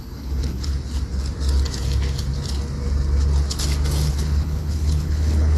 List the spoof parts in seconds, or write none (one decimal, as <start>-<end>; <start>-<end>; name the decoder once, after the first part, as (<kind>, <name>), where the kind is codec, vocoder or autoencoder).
0.0-0.7 (codec, HILCodec); 4.1-5.6